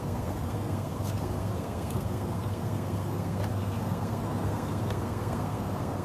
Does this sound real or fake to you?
fake